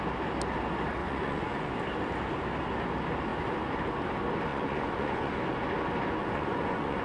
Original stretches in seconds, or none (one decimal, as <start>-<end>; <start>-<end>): 0.0-1.0; 1.7-4.5; 5.4-6.2